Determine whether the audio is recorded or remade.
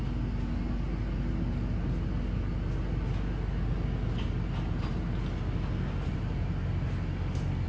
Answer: recorded